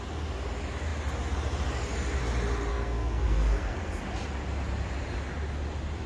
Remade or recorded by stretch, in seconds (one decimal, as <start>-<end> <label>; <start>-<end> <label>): 0.0-2.7 recorded; 2.7-4.0 remade; 4.0-6.1 recorded

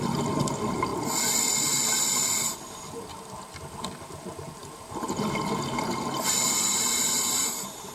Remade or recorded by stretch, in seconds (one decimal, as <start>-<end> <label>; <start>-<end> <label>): 0.0-7.9 recorded

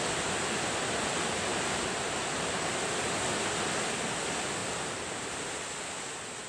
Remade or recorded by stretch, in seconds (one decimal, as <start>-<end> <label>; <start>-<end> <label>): 0.0-1.5 recorded; 1.5-2.7 remade; 2.7-4.6 recorded; 4.6-5.5 remade; 5.5-6.5 recorded